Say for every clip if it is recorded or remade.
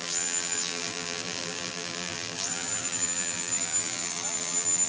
remade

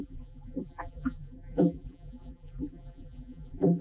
remade